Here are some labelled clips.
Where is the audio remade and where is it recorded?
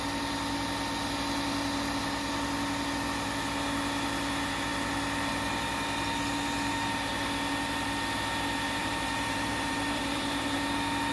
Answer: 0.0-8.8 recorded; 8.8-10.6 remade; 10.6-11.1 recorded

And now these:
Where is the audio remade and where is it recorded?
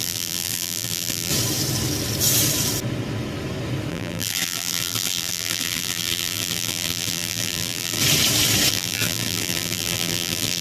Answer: 0.0-1.3 remade; 1.3-3.9 recorded; 3.9-8.0 remade; 8.0-8.7 recorded; 8.7-10.6 remade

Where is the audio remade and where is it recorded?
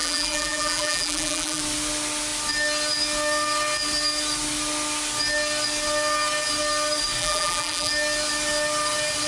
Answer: 0.0-1.6 remade; 1.6-7.2 recorded; 7.2-7.9 remade; 7.9-9.3 recorded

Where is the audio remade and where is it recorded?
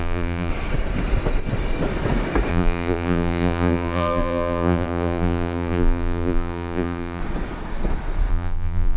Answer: 0.0-0.5 remade; 0.5-2.5 recorded; 2.5-7.2 remade; 7.2-8.3 recorded; 8.3-9.0 remade